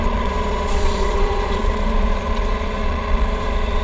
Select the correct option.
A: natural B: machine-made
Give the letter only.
B